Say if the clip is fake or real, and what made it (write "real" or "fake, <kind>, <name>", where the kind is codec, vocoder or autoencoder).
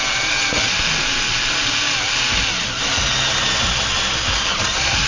real